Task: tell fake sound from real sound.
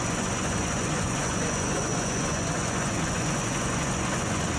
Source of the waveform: fake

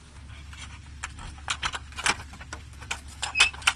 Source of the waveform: real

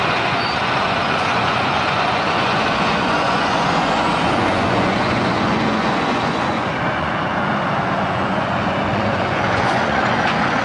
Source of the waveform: fake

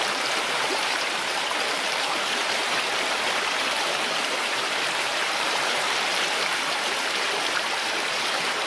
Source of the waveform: fake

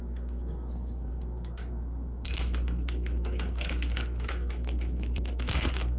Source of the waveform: fake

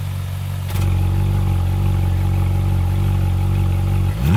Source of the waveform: real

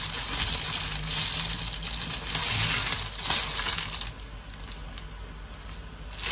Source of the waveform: real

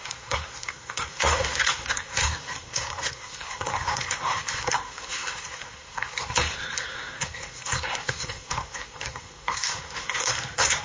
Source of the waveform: fake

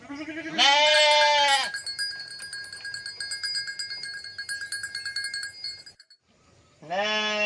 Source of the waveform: real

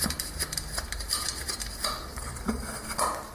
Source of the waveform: real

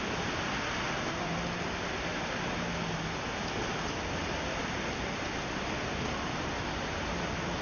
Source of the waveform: real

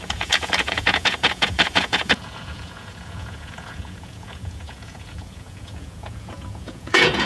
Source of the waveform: fake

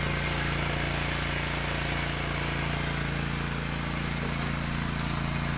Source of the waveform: real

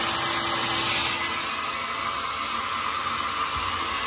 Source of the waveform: real